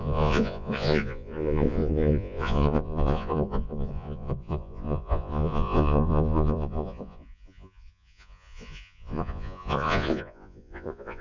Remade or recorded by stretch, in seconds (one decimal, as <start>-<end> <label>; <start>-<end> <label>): 0.0-11.2 remade